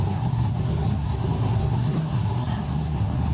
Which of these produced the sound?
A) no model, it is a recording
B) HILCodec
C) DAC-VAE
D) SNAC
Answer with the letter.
D